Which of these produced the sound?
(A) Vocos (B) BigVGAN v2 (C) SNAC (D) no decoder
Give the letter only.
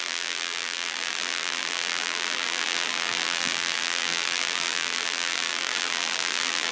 B